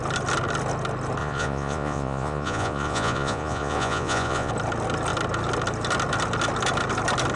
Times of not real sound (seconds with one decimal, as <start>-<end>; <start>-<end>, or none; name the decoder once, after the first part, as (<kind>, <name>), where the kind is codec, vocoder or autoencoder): 1.2-4.5 (vocoder, Vocos)

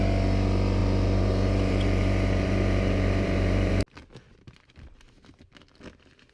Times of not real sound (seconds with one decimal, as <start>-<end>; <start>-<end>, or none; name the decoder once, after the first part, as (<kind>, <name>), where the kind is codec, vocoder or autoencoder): 0.8-3.8 (vocoder, BigVGAN v2)

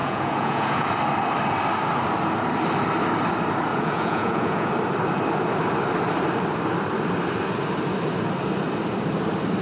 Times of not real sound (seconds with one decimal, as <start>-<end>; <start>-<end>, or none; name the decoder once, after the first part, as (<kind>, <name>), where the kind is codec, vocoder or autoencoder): 0.0-0.9 (vocoder, Vocos); 3.7-4.7

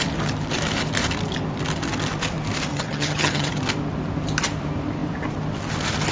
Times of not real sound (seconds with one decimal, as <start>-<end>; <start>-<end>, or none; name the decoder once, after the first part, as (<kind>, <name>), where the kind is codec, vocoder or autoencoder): 2.7-3.6 (vocoder, HiFi-GAN)